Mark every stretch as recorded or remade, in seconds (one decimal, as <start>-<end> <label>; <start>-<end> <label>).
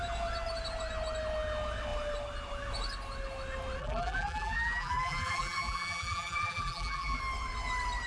0.0-3.8 recorded; 3.8-7.2 remade; 7.2-8.1 recorded